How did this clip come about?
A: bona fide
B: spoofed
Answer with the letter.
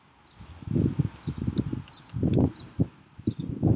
A